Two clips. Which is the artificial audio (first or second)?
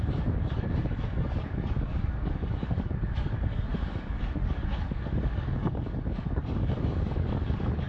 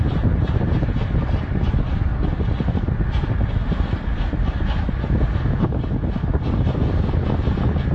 first